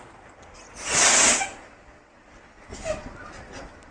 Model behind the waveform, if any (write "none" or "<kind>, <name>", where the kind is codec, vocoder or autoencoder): none